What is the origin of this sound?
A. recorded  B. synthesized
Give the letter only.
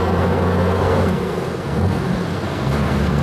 B